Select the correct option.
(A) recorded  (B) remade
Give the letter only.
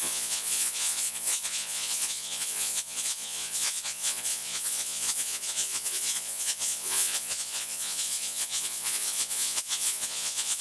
B